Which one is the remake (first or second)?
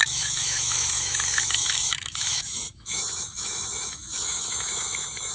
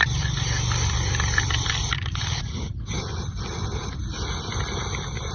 first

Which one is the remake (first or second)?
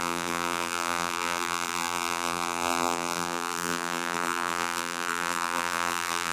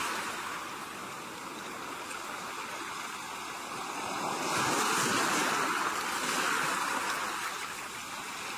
first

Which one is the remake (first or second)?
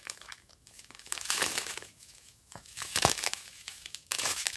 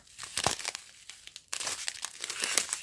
first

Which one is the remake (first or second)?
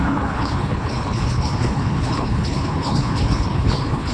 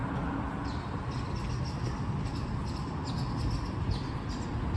first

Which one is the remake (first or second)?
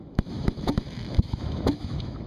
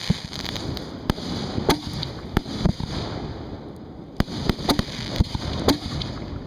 first